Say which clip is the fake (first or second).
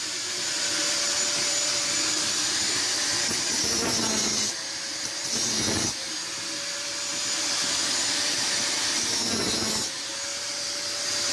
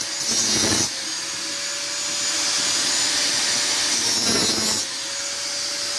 first